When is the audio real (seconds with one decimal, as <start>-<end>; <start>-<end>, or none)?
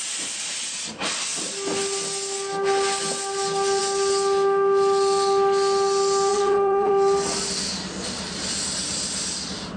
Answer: 0.0-6.3; 6.9-9.8